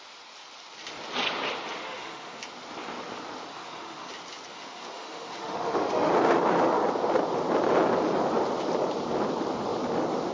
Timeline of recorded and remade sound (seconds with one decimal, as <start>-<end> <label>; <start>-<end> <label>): 0.0-1.8 recorded; 1.8-2.4 remade; 2.4-3.5 recorded; 3.5-4.1 remade; 4.1-4.5 recorded; 4.5-6.1 remade; 6.1-10.3 recorded